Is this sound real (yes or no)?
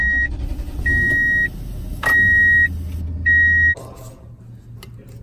yes